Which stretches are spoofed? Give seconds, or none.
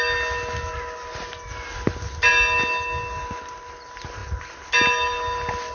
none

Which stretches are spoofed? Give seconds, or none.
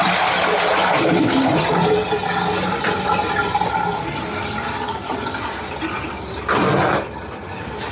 none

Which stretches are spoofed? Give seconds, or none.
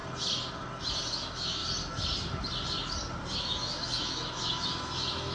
1.1-1.6 (autoencoder, DAC-VAE); 3.4-5.3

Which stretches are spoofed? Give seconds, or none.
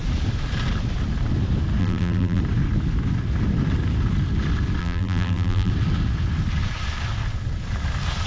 1.8-2.4 (vocoder, BigVGAN v2); 4.8-5.7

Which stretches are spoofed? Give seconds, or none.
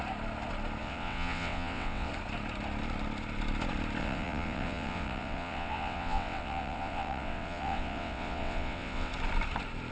0.8-2.1 (vocoder, WaveNeXt); 4.0-9.1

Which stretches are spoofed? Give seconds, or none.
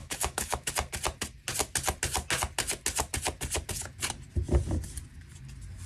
0.0-0.7 (autoencoder, DAC-VAE)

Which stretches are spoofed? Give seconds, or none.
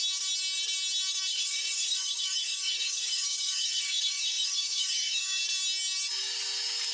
1.3-5.4 (codec, DAC)